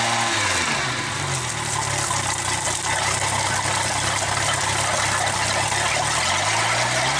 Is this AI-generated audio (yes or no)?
no